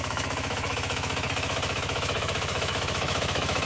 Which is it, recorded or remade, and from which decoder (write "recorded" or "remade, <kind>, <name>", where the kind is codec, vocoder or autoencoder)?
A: remade, autoencoder, DAC-VAE